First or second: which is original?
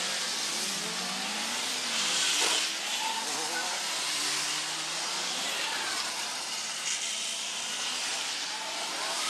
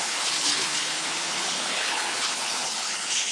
first